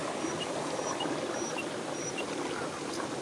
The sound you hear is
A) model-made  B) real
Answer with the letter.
B